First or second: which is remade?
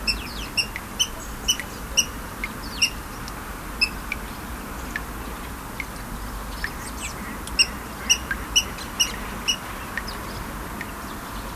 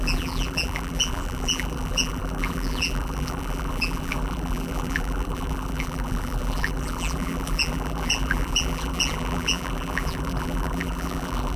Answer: second